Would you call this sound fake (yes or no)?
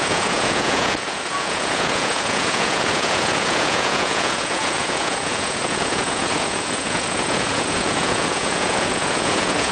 yes